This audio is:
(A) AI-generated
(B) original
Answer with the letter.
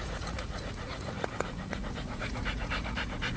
A